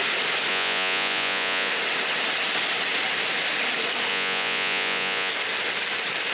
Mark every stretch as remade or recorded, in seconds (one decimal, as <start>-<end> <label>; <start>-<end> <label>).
0.0-0.5 recorded; 0.5-1.7 remade; 1.7-4.1 recorded; 4.1-5.3 remade; 5.3-6.3 recorded